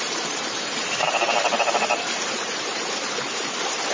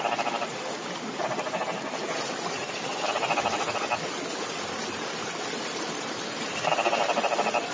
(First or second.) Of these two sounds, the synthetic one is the first